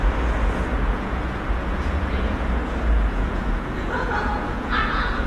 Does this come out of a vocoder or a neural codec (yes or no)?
yes